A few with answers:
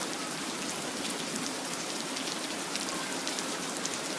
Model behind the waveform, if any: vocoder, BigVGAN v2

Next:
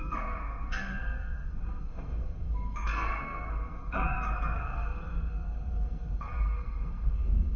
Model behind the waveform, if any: codec, SNAC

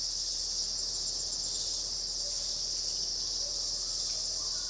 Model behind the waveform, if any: none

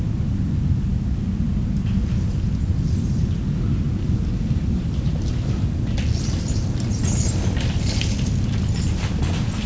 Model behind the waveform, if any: none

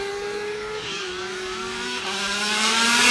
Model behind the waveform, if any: codec, DAC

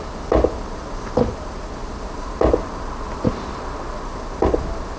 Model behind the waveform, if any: none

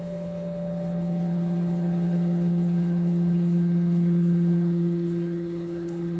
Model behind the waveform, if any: codec, HILCodec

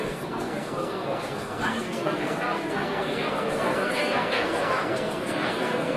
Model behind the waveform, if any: codec, SNAC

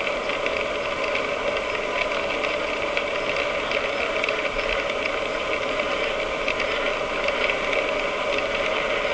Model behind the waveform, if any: none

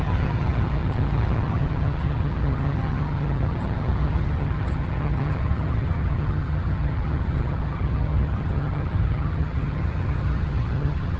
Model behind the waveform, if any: vocoder, HiFi-GAN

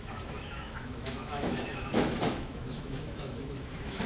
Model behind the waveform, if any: autoencoder, DAC-VAE